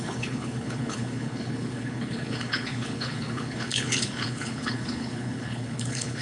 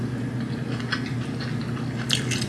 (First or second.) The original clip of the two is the second